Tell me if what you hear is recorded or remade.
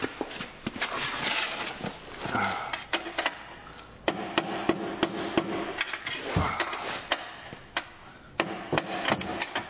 recorded